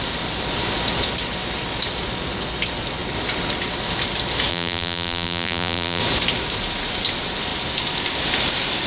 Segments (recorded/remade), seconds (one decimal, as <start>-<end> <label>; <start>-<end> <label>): 0.0-4.5 recorded; 4.5-6.0 remade; 6.0-8.9 recorded

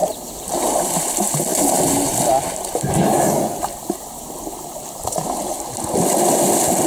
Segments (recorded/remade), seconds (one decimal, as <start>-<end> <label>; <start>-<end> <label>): 0.0-1.1 remade; 1.1-6.9 recorded

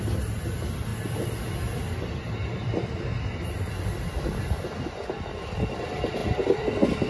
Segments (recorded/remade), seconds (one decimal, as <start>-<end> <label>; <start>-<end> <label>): 0.0-7.1 recorded

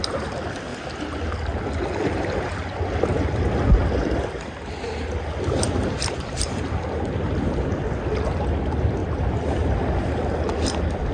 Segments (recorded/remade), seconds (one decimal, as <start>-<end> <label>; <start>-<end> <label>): 0.0-0.7 remade; 0.7-5.4 recorded; 5.4-9.0 remade; 9.0-10.0 recorded; 10.0-11.1 remade

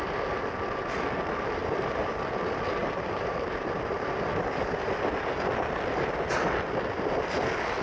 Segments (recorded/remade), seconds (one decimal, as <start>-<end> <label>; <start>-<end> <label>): 0.0-1.6 recorded; 1.6-2.1 remade; 2.1-2.8 recorded; 2.8-4.1 remade; 4.1-7.8 recorded

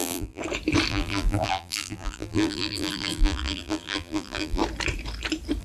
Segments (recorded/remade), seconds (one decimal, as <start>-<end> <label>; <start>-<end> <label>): 0.0-0.4 remade; 0.4-0.9 recorded; 0.9-4.6 remade; 4.6-5.6 recorded

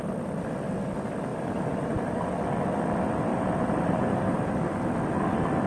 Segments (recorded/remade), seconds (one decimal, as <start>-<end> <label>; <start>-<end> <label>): 0.0-1.3 recorded; 1.3-2.3 remade; 2.3-3.3 recorded; 3.3-4.5 remade; 4.5-5.7 recorded